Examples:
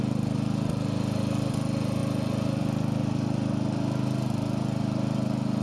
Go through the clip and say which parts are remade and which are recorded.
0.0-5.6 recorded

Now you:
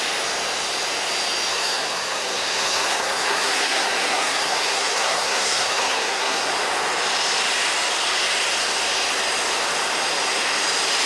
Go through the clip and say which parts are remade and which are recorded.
0.0-1.5 recorded; 1.5-6.5 remade; 6.5-11.1 recorded

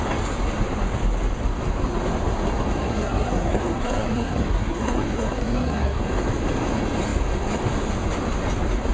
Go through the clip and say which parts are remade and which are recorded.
0.0-2.8 recorded; 2.8-6.0 remade; 6.0-8.9 recorded

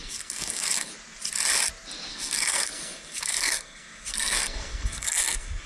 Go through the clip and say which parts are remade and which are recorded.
0.0-0.9 remade; 0.9-2.1 recorded; 2.1-5.7 remade

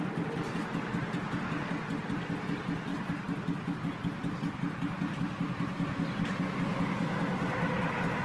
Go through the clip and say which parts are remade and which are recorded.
0.0-8.2 recorded